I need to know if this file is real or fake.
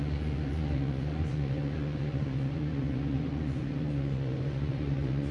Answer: fake